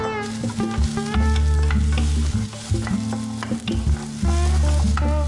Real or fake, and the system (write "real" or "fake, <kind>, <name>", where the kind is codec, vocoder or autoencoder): real